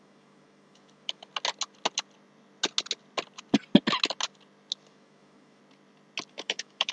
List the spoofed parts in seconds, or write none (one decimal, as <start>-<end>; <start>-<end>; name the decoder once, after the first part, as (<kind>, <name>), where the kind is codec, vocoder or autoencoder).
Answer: 0.0-1.3 (autoencoder, DAC-VAE); 4.9-5.6; 6.3-6.9